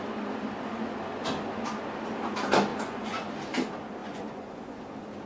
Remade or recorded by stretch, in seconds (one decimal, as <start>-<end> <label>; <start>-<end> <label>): 0.0-2.7 recorded; 2.7-3.3 remade; 3.3-4.0 recorded; 4.0-4.8 remade; 4.8-5.3 recorded